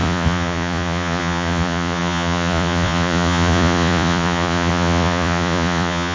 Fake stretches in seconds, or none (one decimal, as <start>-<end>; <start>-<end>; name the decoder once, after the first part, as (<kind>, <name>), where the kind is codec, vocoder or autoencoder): 0.0-6.1 (vocoder, Vocos)